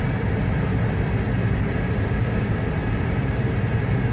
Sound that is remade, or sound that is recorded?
remade